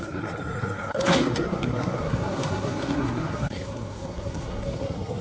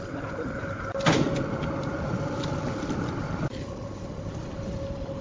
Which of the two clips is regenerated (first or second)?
first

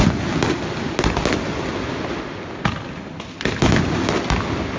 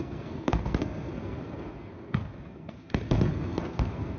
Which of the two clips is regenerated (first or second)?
second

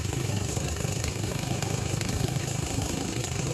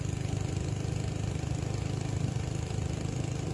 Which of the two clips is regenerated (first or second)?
first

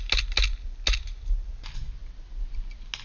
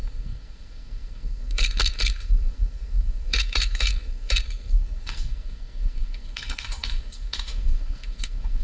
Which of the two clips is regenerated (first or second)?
second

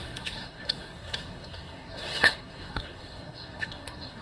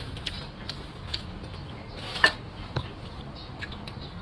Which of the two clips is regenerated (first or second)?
first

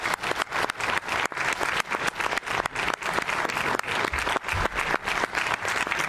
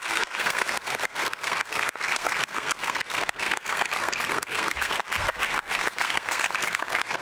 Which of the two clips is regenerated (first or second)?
second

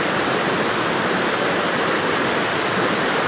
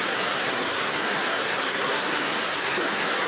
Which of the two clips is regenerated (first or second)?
second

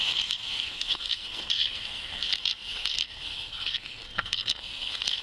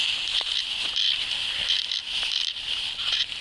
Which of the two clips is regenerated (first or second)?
first